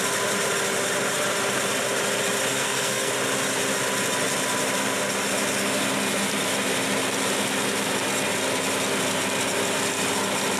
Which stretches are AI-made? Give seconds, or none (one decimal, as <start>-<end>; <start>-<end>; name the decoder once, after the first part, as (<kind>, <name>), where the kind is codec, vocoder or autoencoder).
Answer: 2.5-3.1 (codec, SNAC)